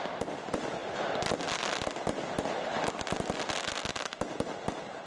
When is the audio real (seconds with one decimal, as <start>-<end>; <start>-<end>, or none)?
0.0-5.1